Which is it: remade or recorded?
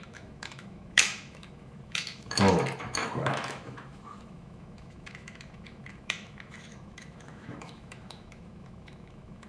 remade